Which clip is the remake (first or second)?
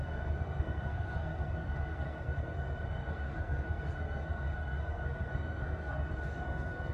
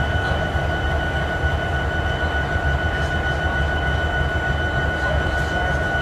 first